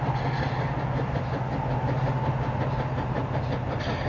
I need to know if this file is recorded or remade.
recorded